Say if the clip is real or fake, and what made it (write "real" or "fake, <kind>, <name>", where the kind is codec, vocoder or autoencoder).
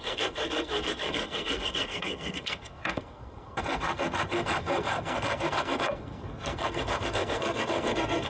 fake, codec, SNAC